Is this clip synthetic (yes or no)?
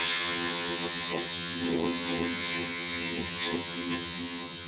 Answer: yes